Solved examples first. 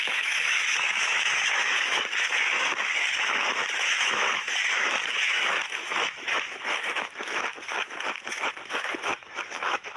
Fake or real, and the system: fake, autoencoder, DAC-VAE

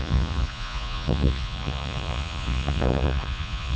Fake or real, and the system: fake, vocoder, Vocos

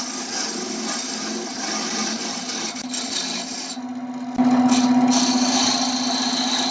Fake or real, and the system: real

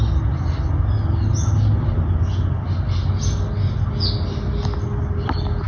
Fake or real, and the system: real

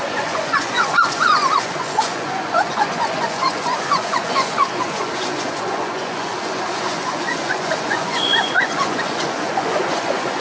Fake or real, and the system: fake, vocoder, Vocos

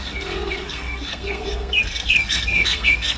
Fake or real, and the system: fake, codec, SNAC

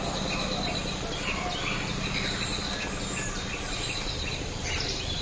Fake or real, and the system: fake, vocoder, BigVGAN v2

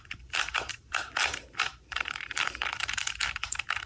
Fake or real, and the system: fake, vocoder, BigVGAN v2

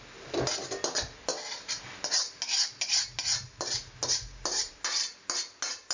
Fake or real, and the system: real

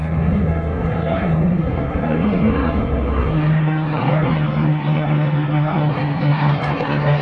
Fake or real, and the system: fake, codec, SNAC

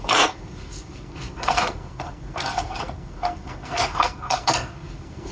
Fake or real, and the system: fake, codec, SNAC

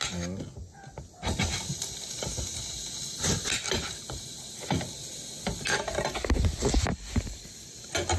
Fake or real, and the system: real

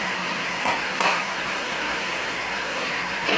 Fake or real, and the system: fake, codec, SNAC